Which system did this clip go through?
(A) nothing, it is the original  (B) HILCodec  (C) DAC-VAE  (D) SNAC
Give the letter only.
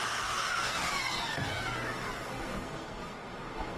D